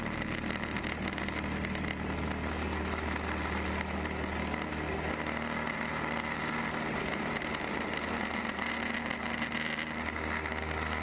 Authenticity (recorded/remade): recorded